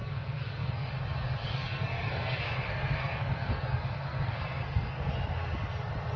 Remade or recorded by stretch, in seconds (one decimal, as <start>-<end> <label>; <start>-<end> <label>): 0.0-0.9 remade; 0.9-1.4 recorded; 1.4-5.1 remade; 5.1-6.2 recorded